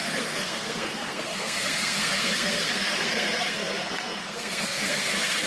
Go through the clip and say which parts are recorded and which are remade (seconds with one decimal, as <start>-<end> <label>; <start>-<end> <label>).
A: 0.0-5.5 remade